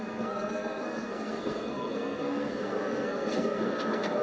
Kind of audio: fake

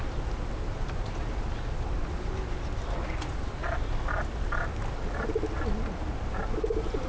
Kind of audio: real